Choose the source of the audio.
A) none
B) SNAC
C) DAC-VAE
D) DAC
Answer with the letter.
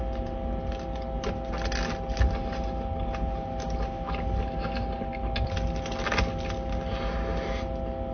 A